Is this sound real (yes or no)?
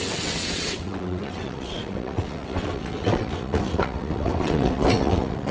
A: no